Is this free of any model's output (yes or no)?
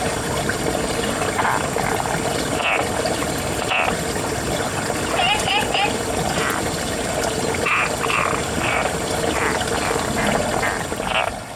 yes